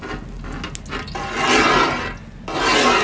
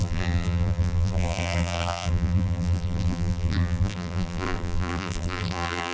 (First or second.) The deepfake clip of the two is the second